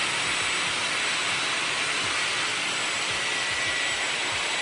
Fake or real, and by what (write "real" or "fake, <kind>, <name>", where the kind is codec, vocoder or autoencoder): real